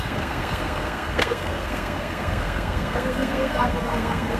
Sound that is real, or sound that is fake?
fake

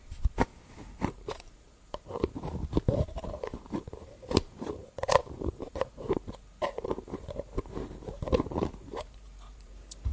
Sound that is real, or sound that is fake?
fake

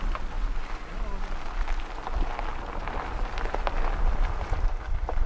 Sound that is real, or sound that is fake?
real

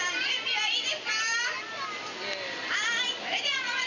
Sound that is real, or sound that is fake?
real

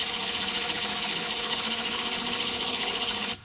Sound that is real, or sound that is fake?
fake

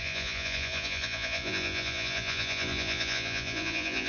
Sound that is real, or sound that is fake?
fake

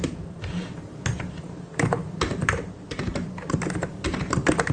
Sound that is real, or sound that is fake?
fake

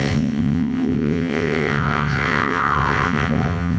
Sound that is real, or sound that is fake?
fake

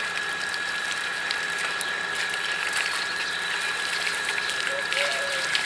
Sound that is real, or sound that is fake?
fake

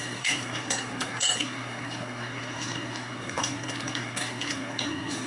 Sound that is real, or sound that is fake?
fake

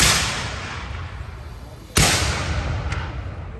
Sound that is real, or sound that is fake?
real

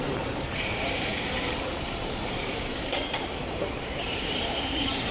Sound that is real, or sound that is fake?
fake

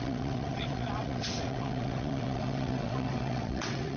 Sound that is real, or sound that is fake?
fake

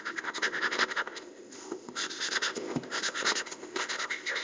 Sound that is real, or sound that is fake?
fake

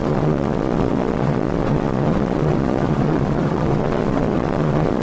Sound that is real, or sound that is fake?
fake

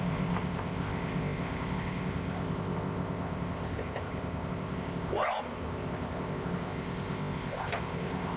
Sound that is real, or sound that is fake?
fake